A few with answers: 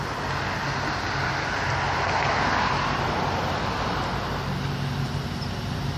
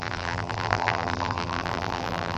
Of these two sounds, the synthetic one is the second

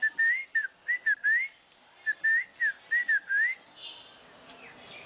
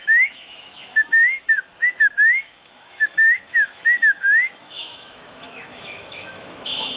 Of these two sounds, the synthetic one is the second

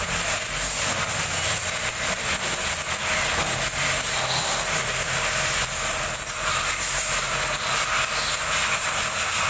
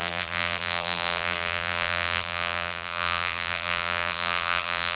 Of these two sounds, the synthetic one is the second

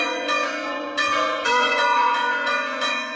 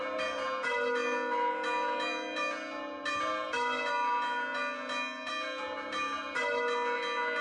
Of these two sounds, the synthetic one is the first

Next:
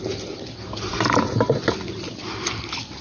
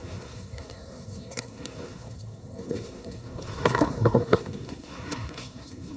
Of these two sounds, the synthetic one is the second